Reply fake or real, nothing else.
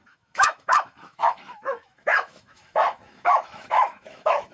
fake